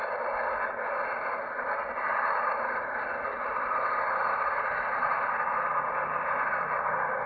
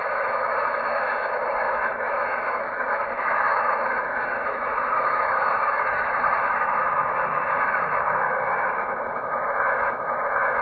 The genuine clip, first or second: first